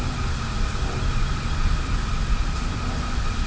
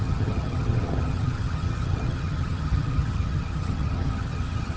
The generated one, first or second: second